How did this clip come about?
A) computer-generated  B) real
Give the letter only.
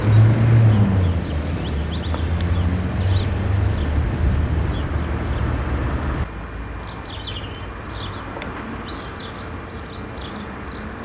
B